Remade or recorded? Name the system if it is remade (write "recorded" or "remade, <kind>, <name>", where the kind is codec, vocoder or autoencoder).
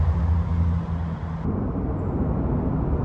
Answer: recorded